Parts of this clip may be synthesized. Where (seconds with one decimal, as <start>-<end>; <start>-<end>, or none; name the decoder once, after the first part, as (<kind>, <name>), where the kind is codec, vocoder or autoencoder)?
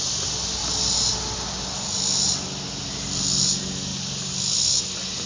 none